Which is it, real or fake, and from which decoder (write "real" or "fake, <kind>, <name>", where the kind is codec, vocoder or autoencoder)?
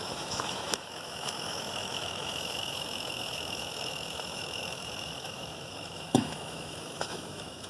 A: fake, autoencoder, DAC-VAE